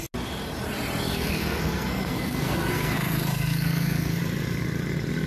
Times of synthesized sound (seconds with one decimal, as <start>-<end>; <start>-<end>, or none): 1.1-4.2